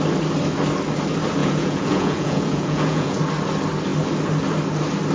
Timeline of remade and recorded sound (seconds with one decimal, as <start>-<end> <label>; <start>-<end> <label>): 0.0-1.4 recorded; 1.4-3.2 remade; 3.2-5.1 recorded